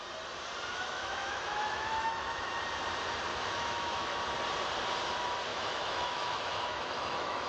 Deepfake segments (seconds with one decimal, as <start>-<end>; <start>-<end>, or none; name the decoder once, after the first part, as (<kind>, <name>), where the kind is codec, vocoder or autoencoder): 0.7-2.5 (autoencoder, DAC-VAE); 3.3-4.2; 5.5-7.5